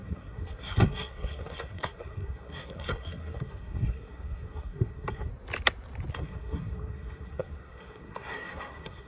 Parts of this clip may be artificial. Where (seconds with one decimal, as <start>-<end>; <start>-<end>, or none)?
0.0-5.3; 6.1-9.1

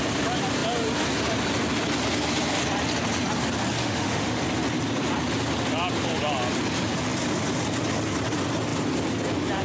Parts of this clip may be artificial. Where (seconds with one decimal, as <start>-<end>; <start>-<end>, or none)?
3.8-4.4

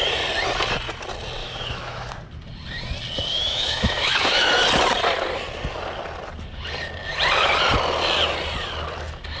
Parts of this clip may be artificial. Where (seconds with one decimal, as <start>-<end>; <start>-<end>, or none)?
1.4-2.1; 3.3-4.5